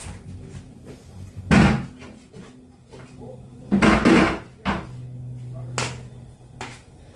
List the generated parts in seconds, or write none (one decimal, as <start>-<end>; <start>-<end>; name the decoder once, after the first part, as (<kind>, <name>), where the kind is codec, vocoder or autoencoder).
none